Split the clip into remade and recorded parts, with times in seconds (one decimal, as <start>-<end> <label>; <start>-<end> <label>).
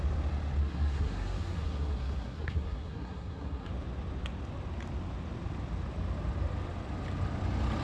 0.0-0.6 recorded; 0.6-3.7 remade; 3.7-7.8 recorded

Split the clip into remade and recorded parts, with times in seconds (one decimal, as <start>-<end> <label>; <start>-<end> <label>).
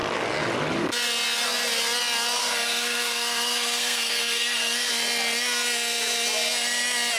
0.0-2.4 recorded; 2.4-4.9 remade; 4.9-7.2 recorded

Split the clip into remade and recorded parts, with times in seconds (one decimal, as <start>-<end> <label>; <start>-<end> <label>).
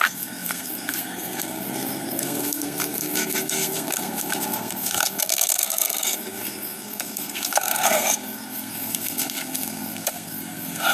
0.0-10.9 remade